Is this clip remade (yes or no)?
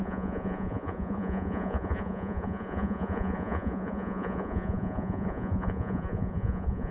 yes